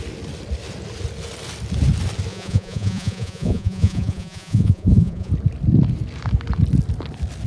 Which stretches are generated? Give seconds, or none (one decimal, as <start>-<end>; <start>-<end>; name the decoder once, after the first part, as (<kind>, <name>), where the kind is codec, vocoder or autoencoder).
2.3-5.3 (vocoder, Vocos)

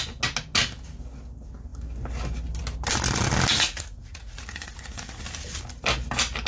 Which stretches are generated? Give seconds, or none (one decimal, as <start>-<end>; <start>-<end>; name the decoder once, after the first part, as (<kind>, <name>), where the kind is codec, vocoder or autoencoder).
3.5-5.2 (vocoder, Vocos)

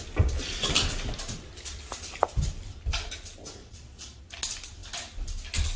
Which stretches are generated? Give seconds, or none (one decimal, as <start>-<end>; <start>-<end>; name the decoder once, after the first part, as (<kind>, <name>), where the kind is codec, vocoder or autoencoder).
3.6-4.2 (vocoder, Vocos)

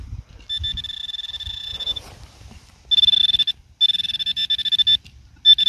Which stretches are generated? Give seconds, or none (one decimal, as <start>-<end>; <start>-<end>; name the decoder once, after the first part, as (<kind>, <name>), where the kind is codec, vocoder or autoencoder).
1.5-2.1 (vocoder, Vocos)